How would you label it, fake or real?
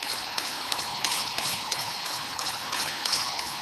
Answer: fake